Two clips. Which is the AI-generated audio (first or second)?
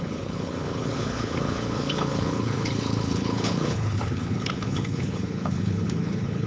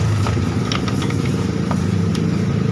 first